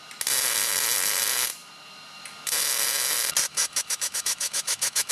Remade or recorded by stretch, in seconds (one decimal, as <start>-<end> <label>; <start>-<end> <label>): 0.0-3.5 recorded; 3.5-5.1 remade